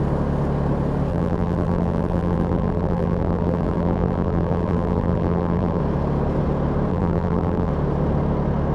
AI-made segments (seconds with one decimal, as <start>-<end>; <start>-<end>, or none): 1.1-5.8; 6.9-7.7